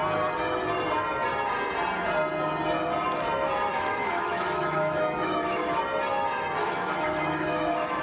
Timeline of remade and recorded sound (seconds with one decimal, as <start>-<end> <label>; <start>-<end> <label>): 0.0-3.7 recorded; 3.7-5.8 remade; 5.8-6.6 recorded; 6.6-8.0 remade